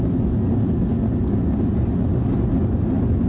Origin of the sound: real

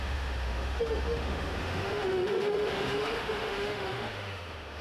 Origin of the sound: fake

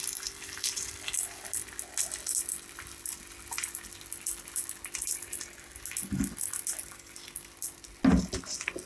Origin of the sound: real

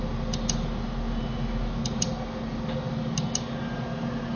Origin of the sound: real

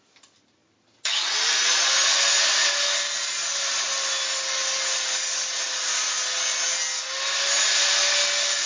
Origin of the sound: real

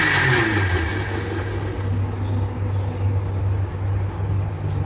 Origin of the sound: real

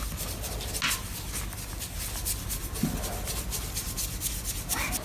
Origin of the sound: real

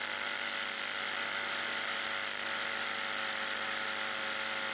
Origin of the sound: real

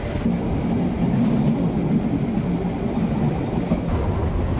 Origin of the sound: real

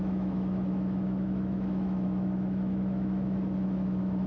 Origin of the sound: fake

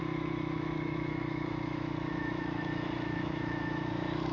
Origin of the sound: fake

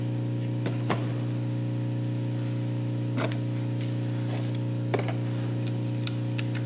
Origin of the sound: real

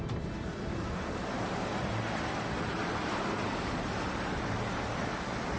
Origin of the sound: real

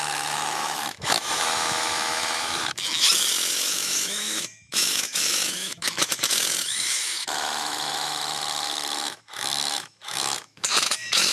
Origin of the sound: fake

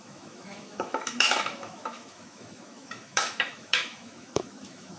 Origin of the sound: fake